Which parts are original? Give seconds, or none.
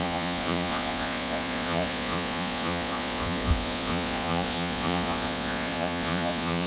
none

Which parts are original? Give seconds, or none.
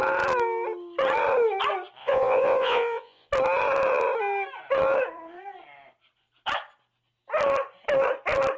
0.0-2.0; 3.3-8.6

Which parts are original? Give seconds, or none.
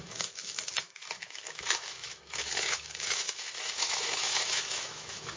none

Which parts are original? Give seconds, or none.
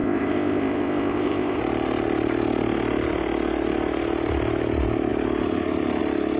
1.6-6.4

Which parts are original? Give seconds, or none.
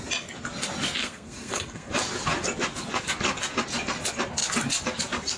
0.0-1.0; 1.9-5.4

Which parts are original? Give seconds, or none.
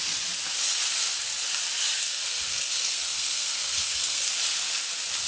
0.0-2.0; 4.3-5.3